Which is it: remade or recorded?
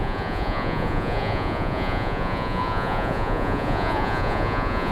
remade